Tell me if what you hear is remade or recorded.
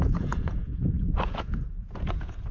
remade